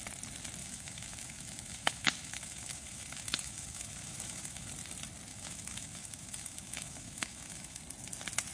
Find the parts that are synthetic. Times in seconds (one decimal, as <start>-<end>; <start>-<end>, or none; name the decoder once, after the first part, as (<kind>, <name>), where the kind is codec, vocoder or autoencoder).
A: 0.6-4.7 (autoencoder, DAC-VAE); 5.3-7.8